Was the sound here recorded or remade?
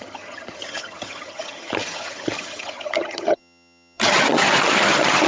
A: remade